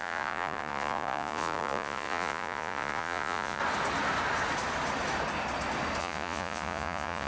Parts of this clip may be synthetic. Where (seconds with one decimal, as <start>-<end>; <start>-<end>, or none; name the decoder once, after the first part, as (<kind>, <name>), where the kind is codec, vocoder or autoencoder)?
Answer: 0.0-3.6 (vocoder, Vocos); 6.0-7.3

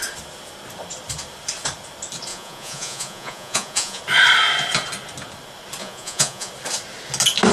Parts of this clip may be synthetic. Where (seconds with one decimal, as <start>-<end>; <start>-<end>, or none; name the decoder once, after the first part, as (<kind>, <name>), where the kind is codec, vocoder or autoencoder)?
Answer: 2.3-4.0 (vocoder, Vocos); 5.8-6.5

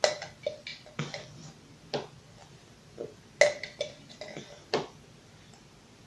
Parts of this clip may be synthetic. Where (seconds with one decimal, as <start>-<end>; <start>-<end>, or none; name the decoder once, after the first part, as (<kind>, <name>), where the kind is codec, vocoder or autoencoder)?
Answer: none